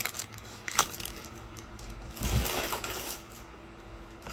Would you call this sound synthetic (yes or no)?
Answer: yes